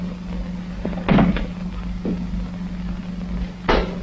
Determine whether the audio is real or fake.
real